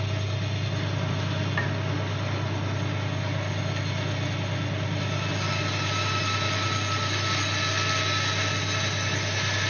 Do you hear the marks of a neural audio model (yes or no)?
no